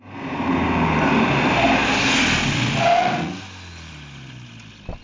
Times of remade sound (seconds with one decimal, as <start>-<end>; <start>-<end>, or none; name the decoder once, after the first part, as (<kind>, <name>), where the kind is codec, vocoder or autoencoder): none